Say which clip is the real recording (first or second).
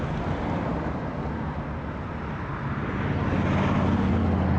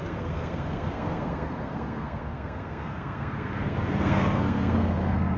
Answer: first